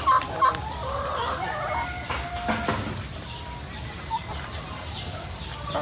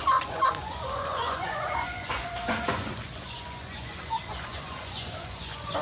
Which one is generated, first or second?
second